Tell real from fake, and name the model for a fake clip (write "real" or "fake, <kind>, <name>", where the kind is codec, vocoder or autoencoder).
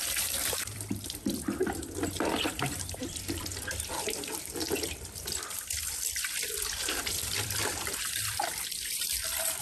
fake, vocoder, BigVGAN v2